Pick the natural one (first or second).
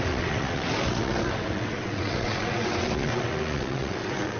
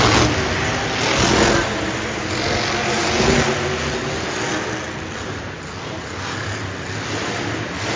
second